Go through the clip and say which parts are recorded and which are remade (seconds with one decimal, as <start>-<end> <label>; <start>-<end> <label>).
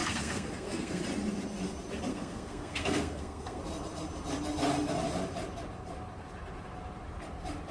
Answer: 0.0-1.0 remade; 1.0-2.1 recorded; 2.1-3.6 remade; 3.6-7.7 recorded